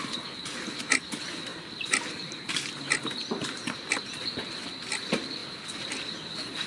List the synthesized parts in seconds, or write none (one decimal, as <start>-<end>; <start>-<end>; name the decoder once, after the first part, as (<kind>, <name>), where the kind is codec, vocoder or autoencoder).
none